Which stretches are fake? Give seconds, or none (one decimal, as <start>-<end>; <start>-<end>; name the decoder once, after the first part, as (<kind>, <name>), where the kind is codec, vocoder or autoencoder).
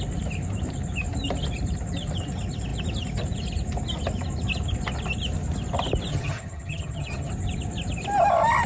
6.1-7.3 (vocoder, HiFi-GAN)